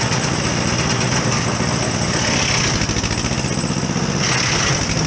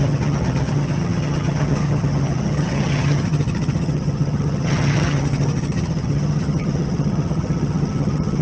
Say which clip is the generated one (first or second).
second